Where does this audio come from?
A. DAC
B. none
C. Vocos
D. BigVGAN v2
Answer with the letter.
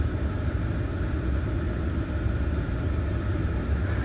B